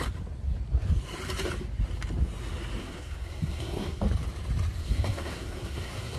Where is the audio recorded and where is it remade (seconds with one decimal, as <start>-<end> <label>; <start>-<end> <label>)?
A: 0.0-2.8 recorded; 2.8-4.0 remade; 4.0-4.8 recorded; 4.8-6.2 remade